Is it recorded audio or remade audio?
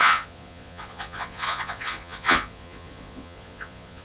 remade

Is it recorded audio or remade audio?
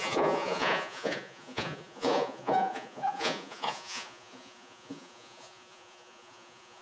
remade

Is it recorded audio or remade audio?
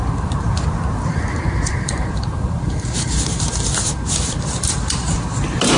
remade